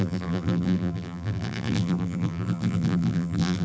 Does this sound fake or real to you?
fake